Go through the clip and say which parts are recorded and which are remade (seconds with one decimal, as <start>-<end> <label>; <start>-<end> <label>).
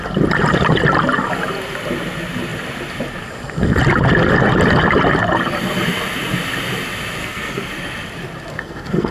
0.0-7.2 recorded; 7.2-7.7 remade; 7.7-8.5 recorded; 8.5-9.1 remade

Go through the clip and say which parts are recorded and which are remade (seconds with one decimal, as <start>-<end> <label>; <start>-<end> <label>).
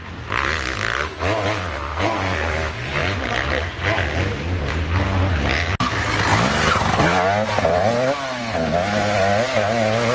0.0-1.9 recorded; 1.9-2.5 remade; 2.5-10.1 recorded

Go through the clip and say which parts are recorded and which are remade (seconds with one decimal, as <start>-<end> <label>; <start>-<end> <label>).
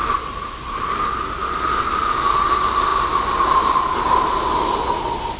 0.0-5.4 recorded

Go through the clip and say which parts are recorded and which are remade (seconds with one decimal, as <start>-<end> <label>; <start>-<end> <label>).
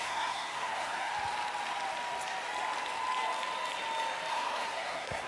0.0-1.1 remade; 1.1-4.3 recorded; 4.3-5.3 remade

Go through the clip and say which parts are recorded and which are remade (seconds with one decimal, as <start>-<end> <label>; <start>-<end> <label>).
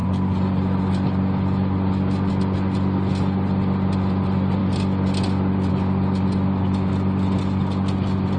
0.0-8.4 recorded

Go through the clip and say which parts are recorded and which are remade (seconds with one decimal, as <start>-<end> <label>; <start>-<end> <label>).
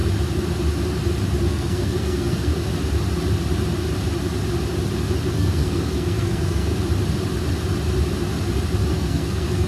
0.0-1.5 recorded; 1.5-2.5 remade; 2.5-5.3 recorded; 5.3-6.7 remade; 6.7-8.9 recorded; 8.9-9.7 remade